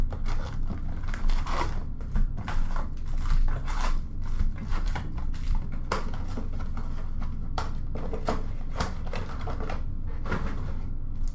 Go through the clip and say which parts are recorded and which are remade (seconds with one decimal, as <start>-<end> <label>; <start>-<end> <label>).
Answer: 0.0-4.7 recorded; 4.7-5.2 remade; 5.2-11.3 recorded